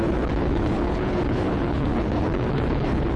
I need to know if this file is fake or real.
fake